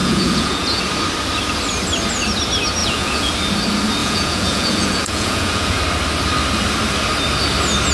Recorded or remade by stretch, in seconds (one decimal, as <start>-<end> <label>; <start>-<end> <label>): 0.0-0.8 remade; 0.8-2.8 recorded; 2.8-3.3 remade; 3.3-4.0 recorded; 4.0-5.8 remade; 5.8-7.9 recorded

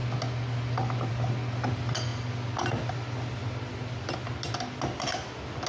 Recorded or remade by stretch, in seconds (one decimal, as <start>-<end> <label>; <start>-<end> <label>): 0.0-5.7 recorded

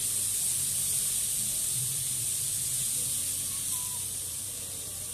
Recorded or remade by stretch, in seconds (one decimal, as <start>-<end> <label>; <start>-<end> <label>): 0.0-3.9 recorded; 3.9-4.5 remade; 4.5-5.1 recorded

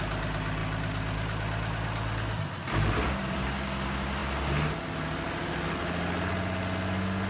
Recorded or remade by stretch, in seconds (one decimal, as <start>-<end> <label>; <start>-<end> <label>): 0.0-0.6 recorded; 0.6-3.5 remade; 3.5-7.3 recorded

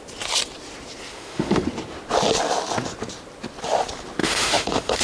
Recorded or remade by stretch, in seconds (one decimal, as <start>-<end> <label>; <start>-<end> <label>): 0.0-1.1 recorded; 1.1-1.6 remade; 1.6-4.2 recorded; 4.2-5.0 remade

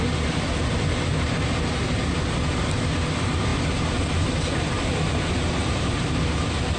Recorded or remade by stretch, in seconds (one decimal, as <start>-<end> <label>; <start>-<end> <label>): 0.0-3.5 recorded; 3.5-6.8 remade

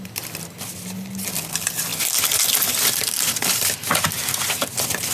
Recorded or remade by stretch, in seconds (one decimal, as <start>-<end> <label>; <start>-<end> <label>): 0.0-5.1 recorded

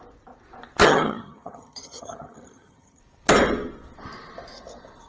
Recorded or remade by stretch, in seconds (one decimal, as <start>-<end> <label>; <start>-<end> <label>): 0.0-0.8 recorded; 0.8-3.0 remade; 3.0-5.1 recorded